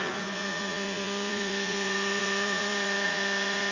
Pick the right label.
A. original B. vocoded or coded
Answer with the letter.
B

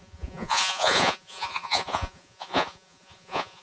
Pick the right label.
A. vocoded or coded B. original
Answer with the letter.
A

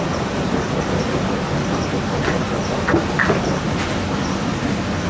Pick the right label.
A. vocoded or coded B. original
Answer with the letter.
B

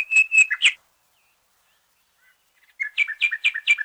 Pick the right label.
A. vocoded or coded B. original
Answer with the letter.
B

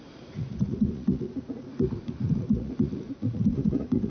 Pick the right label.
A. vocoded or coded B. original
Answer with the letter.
A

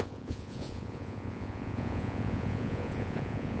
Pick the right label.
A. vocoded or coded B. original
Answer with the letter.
A